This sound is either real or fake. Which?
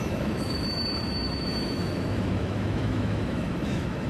fake